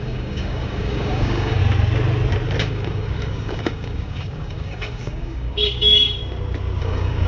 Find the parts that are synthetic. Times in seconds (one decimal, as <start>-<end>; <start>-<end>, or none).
0.0-1.6; 2.6-6.2; 6.8-7.3